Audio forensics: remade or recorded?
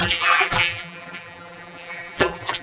remade